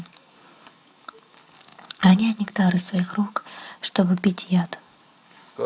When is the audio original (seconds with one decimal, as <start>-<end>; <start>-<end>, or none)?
3.6-4.8